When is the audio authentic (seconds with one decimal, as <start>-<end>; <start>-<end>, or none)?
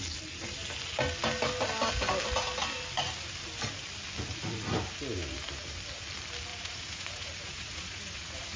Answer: 0.0-6.5